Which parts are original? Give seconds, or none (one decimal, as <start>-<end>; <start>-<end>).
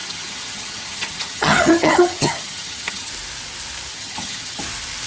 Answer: 3.1-3.9; 4.6-5.1